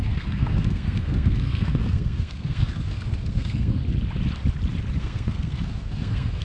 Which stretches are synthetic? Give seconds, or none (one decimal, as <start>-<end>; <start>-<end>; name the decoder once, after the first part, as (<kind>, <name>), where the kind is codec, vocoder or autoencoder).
0.0-3.8 (codec, SNAC); 5.0-6.4